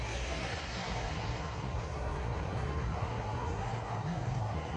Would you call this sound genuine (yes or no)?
no